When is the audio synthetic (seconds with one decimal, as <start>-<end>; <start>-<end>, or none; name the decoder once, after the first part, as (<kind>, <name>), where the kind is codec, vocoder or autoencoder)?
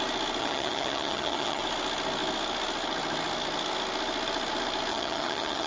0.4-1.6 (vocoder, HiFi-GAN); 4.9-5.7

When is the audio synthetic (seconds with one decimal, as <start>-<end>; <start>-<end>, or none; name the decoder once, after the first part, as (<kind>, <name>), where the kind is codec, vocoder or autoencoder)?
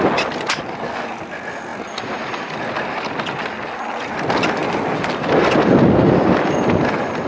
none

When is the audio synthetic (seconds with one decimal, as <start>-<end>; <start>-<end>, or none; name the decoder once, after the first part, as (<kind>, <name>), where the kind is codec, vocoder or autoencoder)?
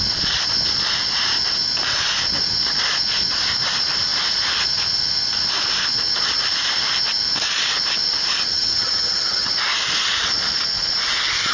8.5-9.5 (vocoder, HiFi-GAN)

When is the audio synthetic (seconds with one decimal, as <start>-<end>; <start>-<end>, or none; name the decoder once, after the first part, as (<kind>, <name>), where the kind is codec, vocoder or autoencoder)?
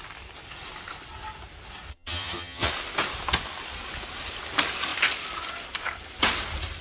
1.9-2.7 (vocoder, HiFi-GAN)